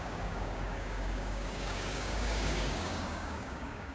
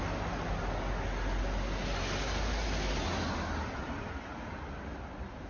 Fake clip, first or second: first